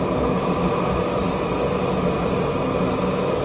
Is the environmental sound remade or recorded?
recorded